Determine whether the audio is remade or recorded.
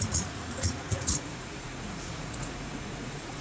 remade